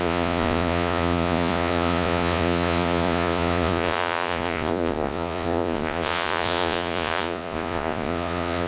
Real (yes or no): no